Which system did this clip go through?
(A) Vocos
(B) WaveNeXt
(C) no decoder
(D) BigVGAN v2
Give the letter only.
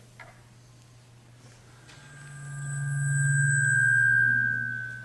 C